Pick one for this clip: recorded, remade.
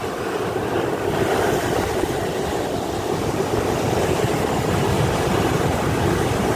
recorded